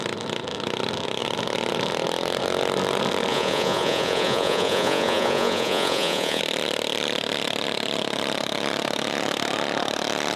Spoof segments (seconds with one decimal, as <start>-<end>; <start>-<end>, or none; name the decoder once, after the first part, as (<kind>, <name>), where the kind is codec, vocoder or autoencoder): 3.3-6.4 (vocoder, Vocos)